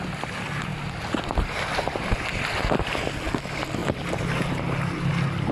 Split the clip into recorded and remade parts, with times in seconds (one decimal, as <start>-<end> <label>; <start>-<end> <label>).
0.0-5.5 recorded